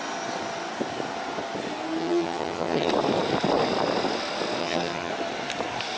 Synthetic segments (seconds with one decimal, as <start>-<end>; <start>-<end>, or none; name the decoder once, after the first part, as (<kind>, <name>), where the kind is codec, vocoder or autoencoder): 2.0-2.9 (vocoder, HiFi-GAN); 4.6-5.1